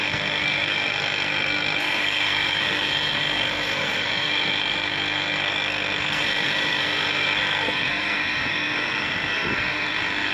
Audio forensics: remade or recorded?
remade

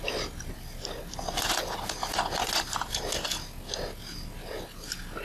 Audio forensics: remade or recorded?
recorded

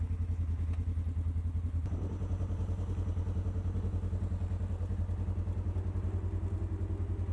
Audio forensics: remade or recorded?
recorded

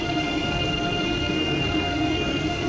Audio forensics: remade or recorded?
remade